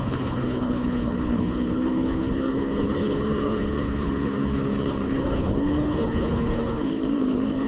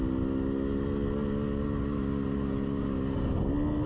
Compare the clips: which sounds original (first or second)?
second